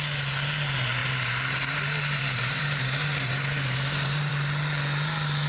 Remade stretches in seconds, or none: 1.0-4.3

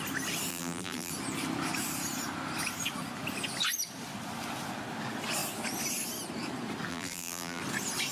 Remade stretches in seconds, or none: 0.5-1.1; 6.9-7.6

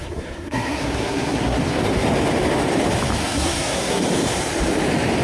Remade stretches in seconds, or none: 0.0-1.8; 3.2-4.0

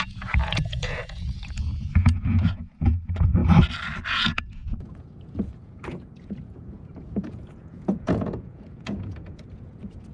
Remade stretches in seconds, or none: 0.0-3.4; 4.1-10.1

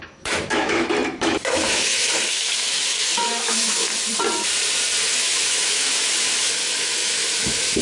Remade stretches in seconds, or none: 0.0-3.9; 5.0-7.8